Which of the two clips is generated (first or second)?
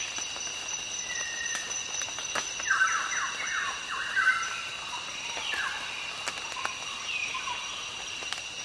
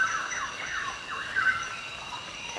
second